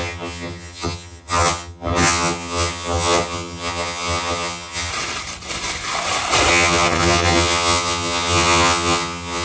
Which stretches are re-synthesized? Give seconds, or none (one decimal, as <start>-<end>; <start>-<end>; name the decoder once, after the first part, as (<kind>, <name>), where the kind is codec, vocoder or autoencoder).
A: 0.0-4.9 (vocoder, HiFi-GAN); 6.5-9.4